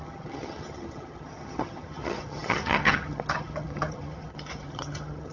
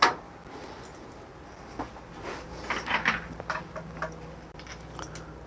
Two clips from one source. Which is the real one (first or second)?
second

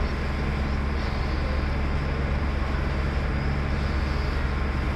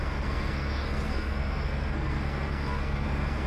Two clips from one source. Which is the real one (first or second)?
first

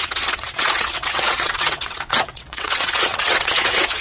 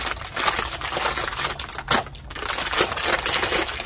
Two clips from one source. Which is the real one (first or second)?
second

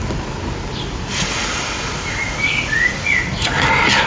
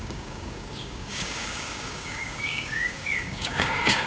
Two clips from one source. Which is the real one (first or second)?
first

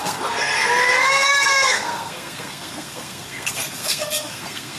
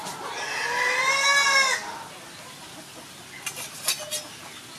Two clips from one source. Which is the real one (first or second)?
second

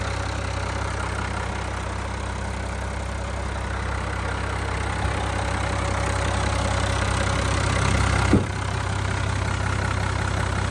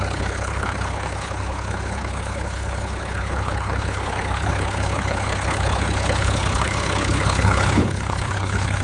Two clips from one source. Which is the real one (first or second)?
first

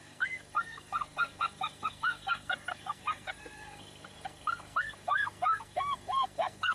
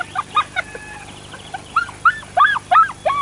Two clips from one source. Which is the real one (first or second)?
second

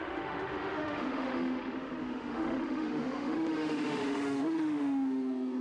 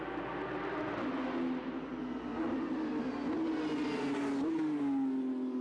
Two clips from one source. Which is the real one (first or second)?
second